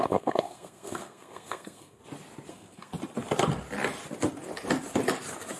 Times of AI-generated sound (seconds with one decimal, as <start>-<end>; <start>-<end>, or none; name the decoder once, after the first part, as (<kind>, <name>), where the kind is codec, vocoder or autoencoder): 0.0-2.0 (codec, SNAC); 2.5-2.9